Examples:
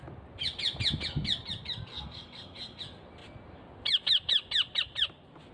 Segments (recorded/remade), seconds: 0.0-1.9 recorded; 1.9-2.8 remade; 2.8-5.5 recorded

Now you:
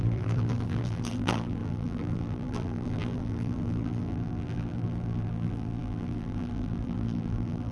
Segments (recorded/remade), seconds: 0.0-7.7 remade

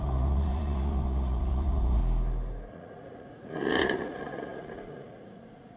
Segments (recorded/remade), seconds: 0.0-2.0 remade; 2.0-2.7 recorded; 2.7-5.8 remade

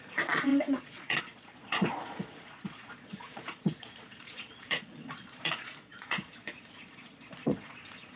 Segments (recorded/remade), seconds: 0.0-8.2 remade